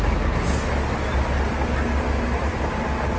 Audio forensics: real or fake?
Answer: real